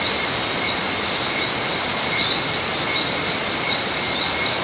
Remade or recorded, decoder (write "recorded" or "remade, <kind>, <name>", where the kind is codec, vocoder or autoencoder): recorded